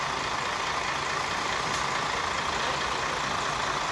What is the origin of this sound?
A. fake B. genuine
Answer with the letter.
B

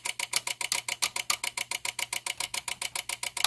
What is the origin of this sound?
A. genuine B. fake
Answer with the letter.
A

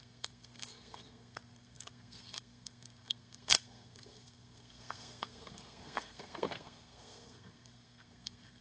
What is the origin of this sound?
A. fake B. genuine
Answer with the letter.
A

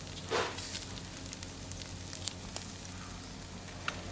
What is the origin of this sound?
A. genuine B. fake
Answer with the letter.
A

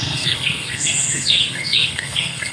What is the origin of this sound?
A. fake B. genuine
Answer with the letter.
A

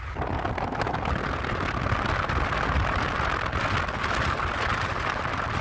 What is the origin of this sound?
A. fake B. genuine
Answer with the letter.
B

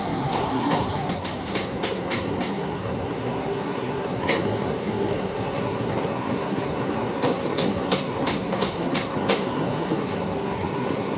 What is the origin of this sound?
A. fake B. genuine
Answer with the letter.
A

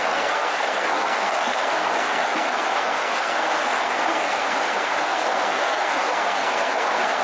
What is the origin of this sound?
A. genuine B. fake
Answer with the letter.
B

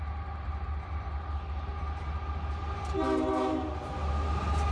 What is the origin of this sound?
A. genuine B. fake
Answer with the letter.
A